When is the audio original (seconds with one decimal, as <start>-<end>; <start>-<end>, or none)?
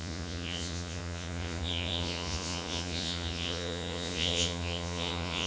none